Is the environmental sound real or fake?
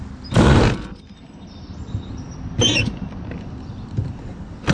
fake